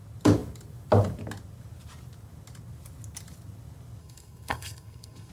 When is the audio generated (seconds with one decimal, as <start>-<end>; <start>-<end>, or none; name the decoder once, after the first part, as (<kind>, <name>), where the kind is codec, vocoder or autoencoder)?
4.0-5.3 (codec, SNAC)